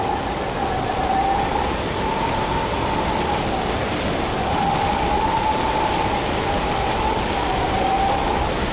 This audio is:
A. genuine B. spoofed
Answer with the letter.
A